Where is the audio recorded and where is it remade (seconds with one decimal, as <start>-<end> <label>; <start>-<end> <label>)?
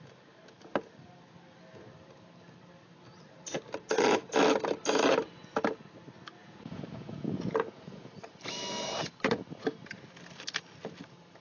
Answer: 0.0-6.4 recorded; 6.4-8.1 remade; 8.1-11.4 recorded